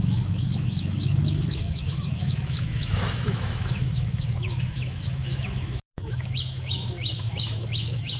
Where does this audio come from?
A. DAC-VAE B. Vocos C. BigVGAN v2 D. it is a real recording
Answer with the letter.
A